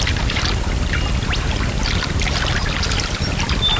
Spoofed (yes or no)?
no